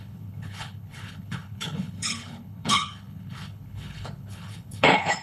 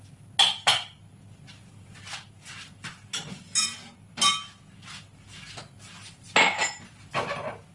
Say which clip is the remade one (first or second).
first